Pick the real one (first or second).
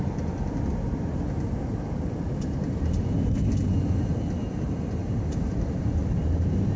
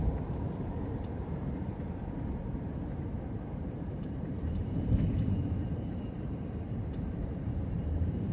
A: first